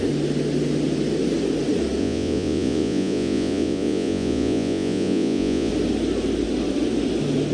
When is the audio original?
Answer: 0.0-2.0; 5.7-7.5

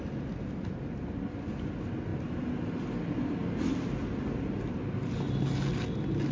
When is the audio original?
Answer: 0.0-6.3

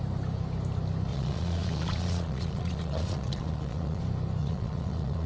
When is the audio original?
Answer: 0.0-1.1; 4.0-4.4

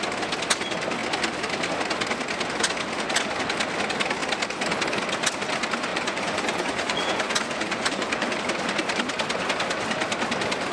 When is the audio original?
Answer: 0.0-5.9; 8.4-10.7

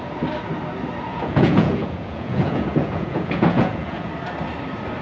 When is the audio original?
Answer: 0.0-1.1; 4.1-5.0

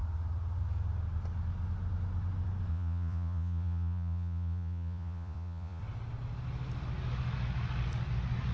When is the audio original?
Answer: 0.0-2.7; 5.8-8.5

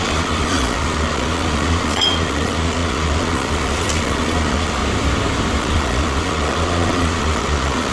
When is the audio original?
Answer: 4.8-5.6